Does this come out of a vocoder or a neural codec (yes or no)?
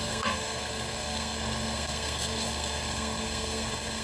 yes